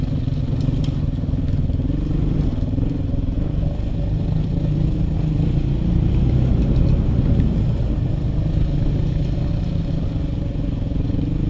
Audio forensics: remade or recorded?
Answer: recorded